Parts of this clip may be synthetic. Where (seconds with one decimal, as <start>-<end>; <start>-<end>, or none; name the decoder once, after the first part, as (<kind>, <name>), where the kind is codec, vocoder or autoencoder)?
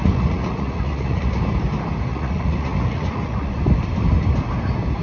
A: 0.0-1.3 (vocoder, Vocos); 2.1-3.5